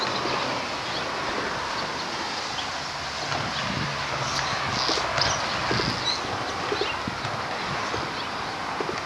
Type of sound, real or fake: real